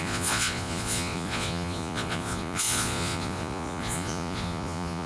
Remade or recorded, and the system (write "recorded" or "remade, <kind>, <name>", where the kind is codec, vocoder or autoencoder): remade, vocoder, Vocos